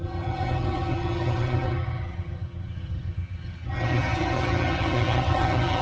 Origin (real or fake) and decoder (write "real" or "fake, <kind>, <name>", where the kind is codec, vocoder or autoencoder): fake, vocoder, HiFi-GAN